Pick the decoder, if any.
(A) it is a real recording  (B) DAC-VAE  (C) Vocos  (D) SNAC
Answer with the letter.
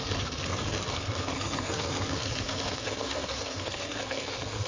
D